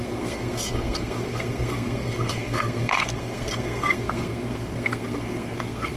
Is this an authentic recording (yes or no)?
no